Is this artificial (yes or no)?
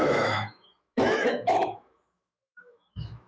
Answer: yes